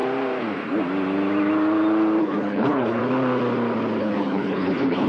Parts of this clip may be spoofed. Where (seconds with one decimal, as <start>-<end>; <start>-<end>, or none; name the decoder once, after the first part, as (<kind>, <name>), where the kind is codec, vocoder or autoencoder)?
2.2-3.0 (codec, HILCodec); 4.0-5.1